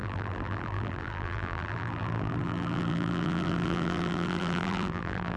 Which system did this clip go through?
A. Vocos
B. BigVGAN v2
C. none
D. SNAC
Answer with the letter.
B